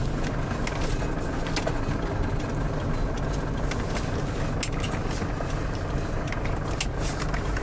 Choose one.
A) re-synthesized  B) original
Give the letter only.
B